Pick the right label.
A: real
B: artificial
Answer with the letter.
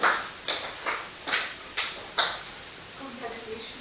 A